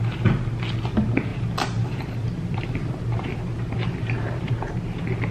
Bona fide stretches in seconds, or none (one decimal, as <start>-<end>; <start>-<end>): 0.0-1.3; 4.5-5.3